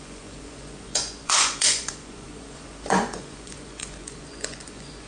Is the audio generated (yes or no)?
yes